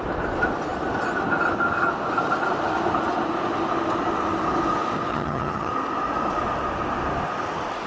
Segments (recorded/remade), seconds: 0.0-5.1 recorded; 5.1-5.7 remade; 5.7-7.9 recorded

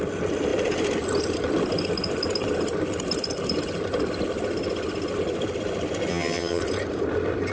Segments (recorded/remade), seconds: 0.0-6.1 recorded; 6.1-6.6 remade; 6.6-7.5 recorded